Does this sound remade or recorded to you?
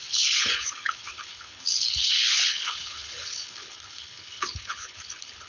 remade